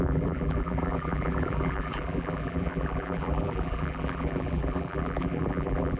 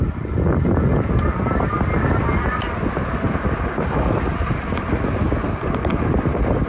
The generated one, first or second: first